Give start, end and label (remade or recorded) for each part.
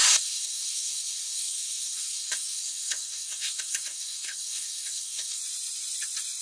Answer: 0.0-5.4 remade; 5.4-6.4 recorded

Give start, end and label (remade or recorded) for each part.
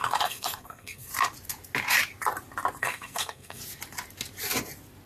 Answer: 0.0-1.1 remade; 1.1-2.8 recorded; 2.8-3.6 remade; 3.6-5.1 recorded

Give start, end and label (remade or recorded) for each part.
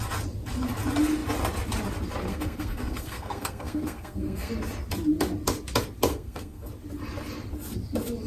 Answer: 0.0-2.3 recorded; 2.3-4.5 remade; 4.5-6.1 recorded; 6.1-6.7 remade; 6.7-8.3 recorded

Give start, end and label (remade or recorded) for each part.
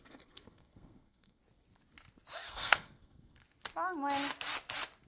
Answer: 0.0-1.4 remade; 1.4-2.5 recorded; 2.5-3.4 remade; 3.4-5.1 recorded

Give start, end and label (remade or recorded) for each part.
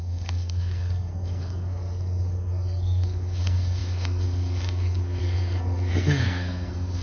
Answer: 0.0-7.0 remade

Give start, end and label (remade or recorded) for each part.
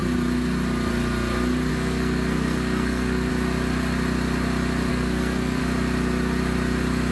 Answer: 0.0-1.7 recorded; 1.7-3.3 remade; 3.3-4.9 recorded; 4.9-5.6 remade; 5.6-7.1 recorded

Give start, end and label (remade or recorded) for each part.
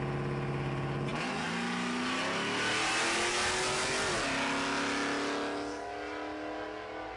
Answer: 0.0-7.2 recorded